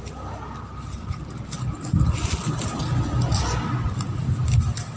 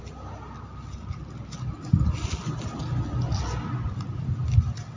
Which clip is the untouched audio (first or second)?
second